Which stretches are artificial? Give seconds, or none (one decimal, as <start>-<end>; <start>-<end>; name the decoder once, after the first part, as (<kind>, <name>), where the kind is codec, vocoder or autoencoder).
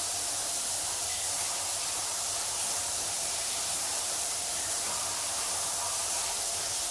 2.0-6.1 (vocoder, BigVGAN v2)